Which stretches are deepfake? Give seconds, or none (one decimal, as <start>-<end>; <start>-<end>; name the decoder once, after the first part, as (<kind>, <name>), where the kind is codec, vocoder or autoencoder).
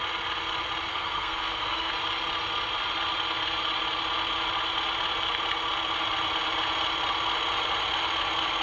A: 0.9-1.9 (codec, SNAC)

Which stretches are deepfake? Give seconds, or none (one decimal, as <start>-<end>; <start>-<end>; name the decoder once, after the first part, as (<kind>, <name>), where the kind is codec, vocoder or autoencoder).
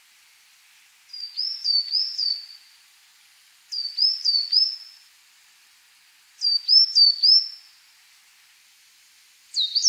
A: none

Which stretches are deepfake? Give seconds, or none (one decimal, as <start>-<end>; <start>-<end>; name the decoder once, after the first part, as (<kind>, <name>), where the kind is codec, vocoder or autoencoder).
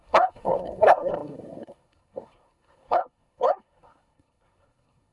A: 0.0-5.1 (codec, SNAC)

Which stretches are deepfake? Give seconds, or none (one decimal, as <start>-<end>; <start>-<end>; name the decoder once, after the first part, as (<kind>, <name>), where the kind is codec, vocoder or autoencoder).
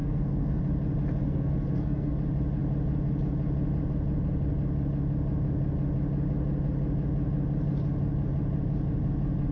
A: 0.0-0.6 (codec, SNAC); 1.2-2.1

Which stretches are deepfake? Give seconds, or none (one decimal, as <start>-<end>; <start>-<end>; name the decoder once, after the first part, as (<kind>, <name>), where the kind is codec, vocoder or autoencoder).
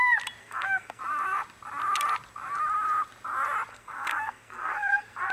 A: 0.4-1.0 (codec, SNAC); 3.7-5.3